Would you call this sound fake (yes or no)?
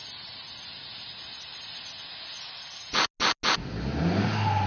no